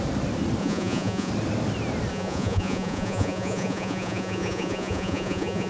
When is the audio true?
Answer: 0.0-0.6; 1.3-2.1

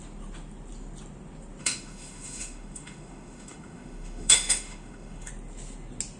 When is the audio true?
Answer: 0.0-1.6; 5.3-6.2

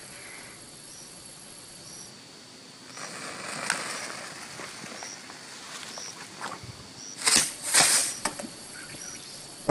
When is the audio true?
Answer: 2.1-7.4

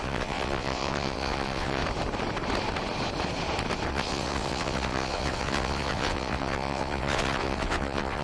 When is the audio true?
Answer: 1.8-3.9

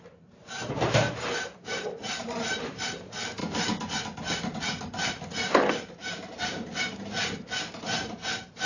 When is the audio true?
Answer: 3.4-5.7

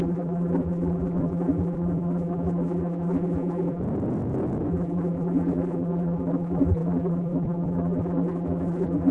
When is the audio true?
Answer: 3.8-4.7

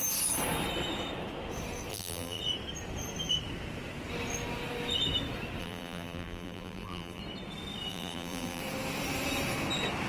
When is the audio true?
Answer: 0.0-1.9; 2.4-5.6; 7.2-7.9; 8.6-10.1

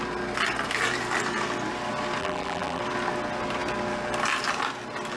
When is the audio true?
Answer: 0.0-2.2; 2.8-5.2